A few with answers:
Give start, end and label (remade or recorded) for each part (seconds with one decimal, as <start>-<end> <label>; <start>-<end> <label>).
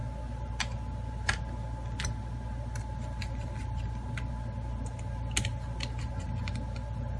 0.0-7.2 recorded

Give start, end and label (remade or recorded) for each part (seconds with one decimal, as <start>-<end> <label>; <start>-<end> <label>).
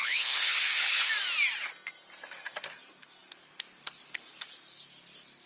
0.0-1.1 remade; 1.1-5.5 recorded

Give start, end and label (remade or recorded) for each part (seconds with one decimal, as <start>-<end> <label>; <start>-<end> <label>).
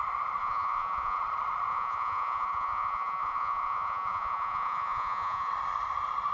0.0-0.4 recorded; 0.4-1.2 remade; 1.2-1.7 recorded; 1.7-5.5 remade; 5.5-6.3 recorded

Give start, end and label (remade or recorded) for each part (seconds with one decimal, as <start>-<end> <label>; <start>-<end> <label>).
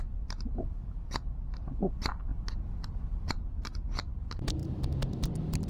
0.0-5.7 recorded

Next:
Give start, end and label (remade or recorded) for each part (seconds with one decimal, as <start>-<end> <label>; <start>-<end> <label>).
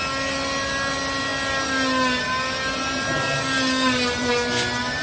0.0-5.0 recorded